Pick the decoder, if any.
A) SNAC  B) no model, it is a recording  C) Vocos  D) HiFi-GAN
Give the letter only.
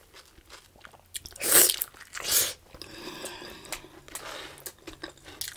B